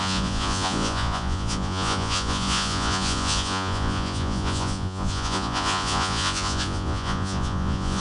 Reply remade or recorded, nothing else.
remade